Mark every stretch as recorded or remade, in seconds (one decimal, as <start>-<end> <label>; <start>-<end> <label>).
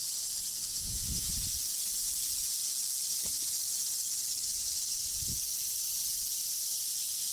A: 0.0-0.7 recorded; 0.7-1.3 remade; 1.3-7.3 recorded